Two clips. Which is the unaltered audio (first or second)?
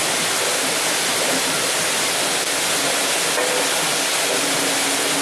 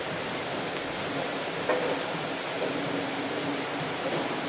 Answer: first